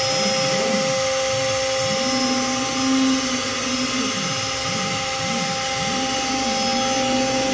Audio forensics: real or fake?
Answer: real